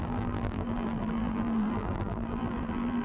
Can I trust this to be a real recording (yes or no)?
no